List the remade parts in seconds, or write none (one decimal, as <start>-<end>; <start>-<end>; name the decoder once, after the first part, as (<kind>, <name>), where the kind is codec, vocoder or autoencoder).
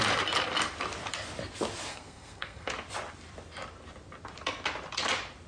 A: 1.9-2.7 (codec, SNAC)